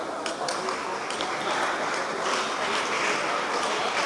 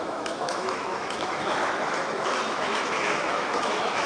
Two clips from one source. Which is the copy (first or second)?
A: second